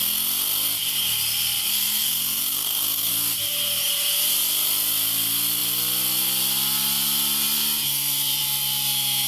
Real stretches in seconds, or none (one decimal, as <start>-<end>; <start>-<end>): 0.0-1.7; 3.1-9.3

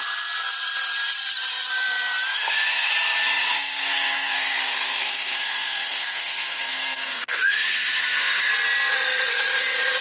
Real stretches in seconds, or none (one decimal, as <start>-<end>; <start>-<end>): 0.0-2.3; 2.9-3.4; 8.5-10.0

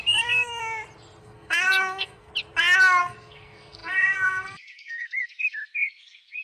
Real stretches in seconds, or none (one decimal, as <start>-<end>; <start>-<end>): 0.6-1.2; 2.3-3.0